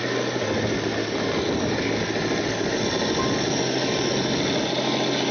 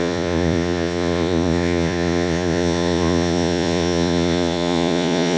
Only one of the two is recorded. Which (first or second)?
first